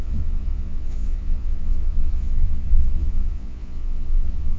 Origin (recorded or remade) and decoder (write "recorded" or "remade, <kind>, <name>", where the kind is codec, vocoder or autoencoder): remade, vocoder, Vocos